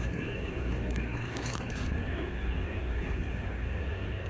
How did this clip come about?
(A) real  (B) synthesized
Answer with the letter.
B